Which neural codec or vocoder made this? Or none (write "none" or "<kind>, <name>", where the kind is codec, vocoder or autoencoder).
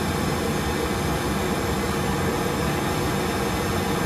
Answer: none